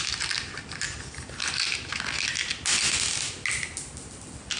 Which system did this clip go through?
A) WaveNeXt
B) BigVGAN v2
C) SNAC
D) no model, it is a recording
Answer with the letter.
D